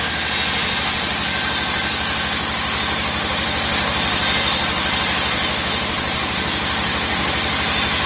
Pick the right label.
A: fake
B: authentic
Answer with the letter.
B